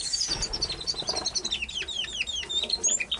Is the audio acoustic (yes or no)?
yes